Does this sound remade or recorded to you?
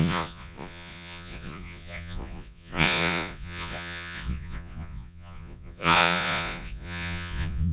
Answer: remade